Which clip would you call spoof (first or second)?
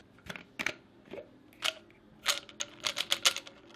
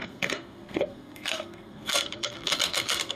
second